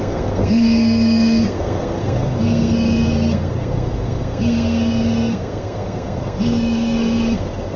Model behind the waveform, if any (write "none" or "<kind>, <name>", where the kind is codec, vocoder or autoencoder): codec, SNAC